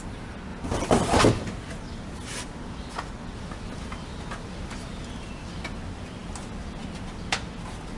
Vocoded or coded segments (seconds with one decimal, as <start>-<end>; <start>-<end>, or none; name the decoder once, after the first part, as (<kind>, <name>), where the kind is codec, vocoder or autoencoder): 0.5-1.2 (vocoder, BigVGAN v2)